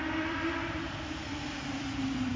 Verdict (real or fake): fake